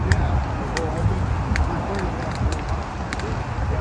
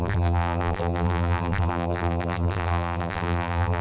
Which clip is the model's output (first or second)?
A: second